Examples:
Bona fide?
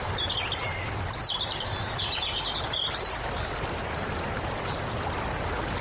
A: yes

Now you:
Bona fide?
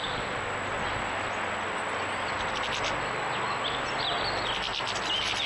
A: yes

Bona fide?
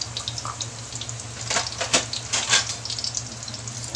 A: yes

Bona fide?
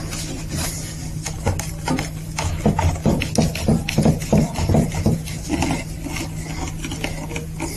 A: yes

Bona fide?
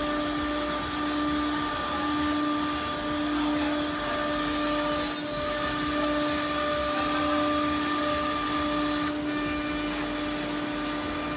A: yes